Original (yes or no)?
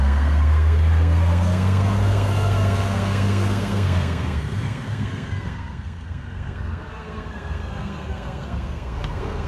no